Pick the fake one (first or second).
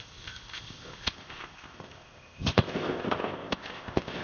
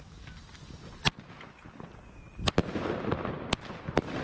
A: first